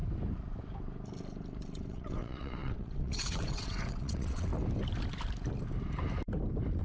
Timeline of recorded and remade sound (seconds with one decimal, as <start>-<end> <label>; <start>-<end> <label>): 0.0-1.9 recorded; 1.9-4.5 remade; 4.5-6.8 recorded